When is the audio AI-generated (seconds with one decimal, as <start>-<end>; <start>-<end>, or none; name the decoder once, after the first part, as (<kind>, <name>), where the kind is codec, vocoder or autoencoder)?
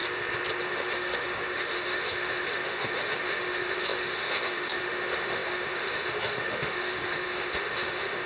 0.6-8.3 (autoencoder, DAC-VAE)